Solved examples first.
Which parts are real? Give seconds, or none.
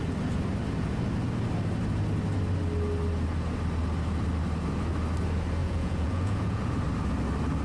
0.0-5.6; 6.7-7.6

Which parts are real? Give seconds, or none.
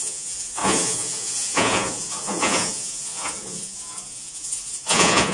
none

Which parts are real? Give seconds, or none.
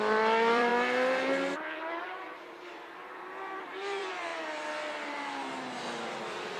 0.7-2.0; 4.3-6.1